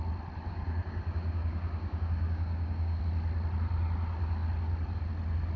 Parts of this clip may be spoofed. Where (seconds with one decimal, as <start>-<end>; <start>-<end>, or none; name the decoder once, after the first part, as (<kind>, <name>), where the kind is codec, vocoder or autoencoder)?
0.5-3.0 (codec, DAC)